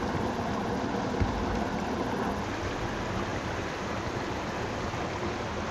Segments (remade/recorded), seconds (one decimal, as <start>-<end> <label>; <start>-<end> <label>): 0.0-3.3 recorded; 3.3-4.7 remade; 4.7-5.7 recorded